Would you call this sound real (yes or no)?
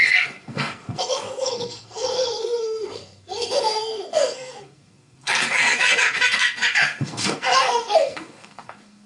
no